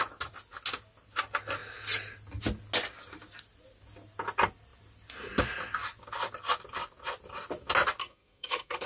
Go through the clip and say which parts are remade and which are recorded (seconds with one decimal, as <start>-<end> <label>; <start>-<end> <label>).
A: 0.0-8.0 recorded; 8.0-8.9 remade

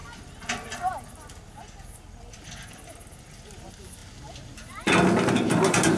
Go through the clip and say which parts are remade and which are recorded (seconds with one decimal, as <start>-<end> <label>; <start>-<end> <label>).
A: 0.0-6.0 recorded

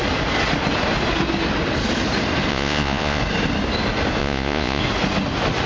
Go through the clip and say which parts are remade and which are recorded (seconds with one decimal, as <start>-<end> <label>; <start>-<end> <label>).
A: 0.0-2.5 recorded; 2.5-3.2 remade; 3.2-4.2 recorded; 4.2-4.8 remade; 4.8-5.7 recorded

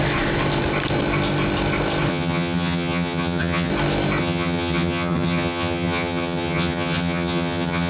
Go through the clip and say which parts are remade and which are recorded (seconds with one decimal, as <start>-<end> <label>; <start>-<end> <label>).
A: 0.0-2.1 recorded; 2.1-3.7 remade; 3.7-4.2 recorded; 4.2-7.9 remade